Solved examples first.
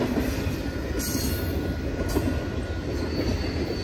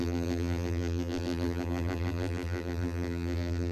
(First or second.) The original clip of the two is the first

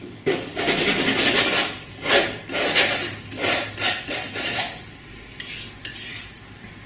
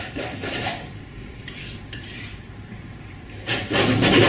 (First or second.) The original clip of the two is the first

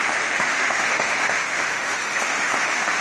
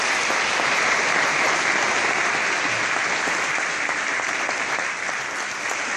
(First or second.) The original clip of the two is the second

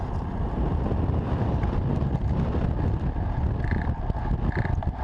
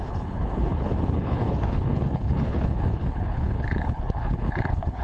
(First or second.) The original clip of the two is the first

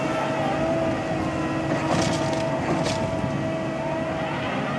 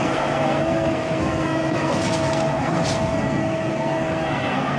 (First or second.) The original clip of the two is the first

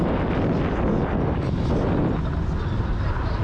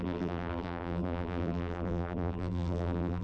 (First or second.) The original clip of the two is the first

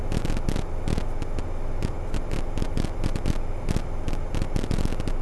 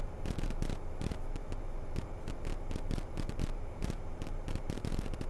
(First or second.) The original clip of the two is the first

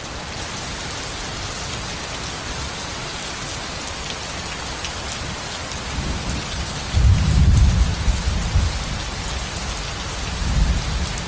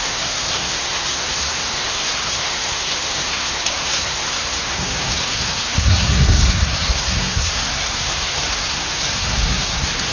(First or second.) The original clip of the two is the first